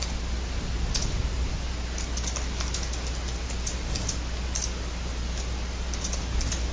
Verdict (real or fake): real